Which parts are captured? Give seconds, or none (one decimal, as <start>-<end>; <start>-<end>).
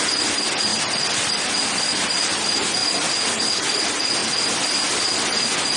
0.0-5.8